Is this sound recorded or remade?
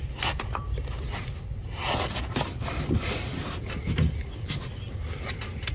recorded